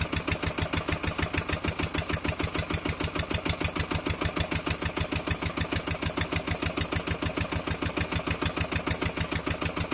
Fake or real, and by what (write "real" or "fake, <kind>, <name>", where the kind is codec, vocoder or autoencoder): real